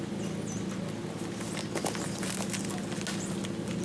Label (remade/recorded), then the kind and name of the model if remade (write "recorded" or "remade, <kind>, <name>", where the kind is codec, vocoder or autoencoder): recorded